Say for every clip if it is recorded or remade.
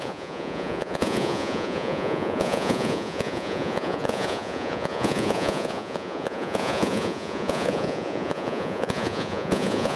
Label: remade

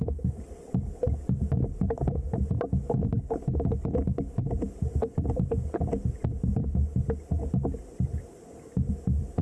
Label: recorded